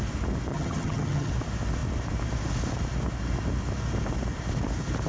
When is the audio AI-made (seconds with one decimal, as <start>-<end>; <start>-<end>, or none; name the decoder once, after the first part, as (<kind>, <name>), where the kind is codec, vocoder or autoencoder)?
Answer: 0.5-1.3 (vocoder, HiFi-GAN)